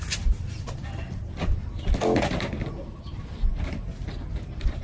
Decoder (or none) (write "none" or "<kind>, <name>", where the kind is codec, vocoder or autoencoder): none